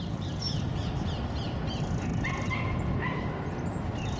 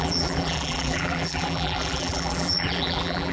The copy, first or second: second